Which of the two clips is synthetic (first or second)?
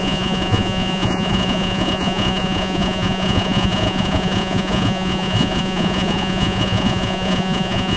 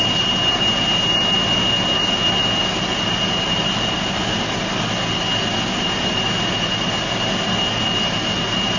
first